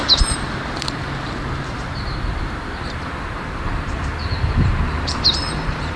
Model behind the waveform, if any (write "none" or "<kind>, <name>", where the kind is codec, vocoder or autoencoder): vocoder, BigVGAN v2